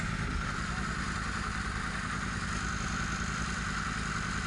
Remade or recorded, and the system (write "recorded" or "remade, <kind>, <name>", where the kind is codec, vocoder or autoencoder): recorded